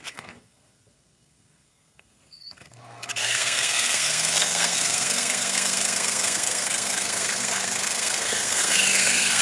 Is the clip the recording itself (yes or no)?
no